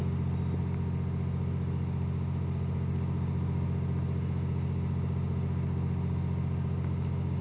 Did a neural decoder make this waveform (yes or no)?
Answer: no